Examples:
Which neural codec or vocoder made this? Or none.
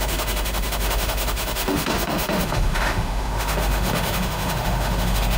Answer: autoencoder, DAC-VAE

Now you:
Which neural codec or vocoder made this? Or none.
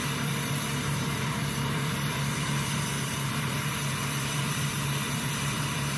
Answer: vocoder, BigVGAN v2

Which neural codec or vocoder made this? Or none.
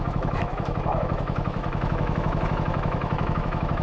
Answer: autoencoder, DAC-VAE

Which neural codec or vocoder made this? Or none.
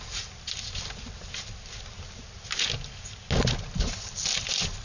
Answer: none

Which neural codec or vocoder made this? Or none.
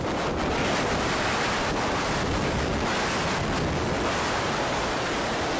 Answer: none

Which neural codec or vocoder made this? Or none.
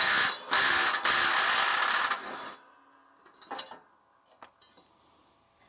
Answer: none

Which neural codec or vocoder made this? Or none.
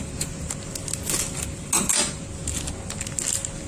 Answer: none